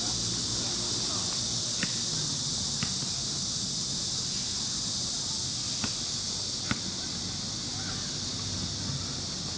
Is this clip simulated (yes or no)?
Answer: no